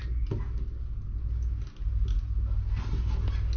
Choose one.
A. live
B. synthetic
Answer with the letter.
A